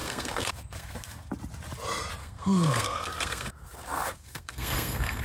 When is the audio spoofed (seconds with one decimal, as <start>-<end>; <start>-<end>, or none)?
0.0-1.3; 2.2-5.2